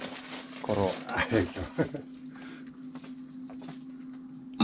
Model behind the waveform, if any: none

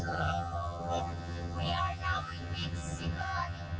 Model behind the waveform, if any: vocoder, HiFi-GAN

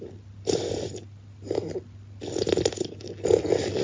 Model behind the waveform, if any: none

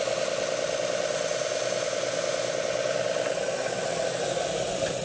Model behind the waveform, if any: none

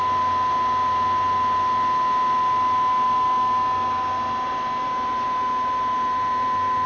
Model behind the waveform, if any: none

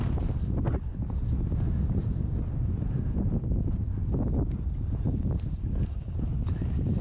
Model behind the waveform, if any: none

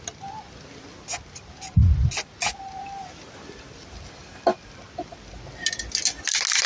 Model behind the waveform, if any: none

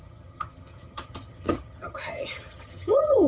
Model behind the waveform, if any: vocoder, HiFi-GAN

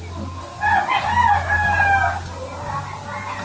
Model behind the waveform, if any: none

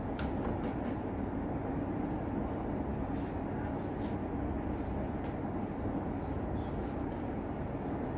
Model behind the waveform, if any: none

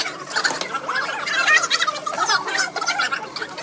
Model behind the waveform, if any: none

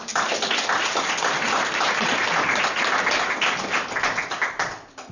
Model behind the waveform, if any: none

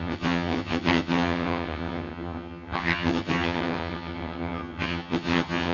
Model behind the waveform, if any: vocoder, HiFi-GAN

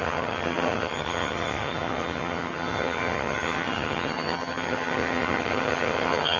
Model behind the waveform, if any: vocoder, HiFi-GAN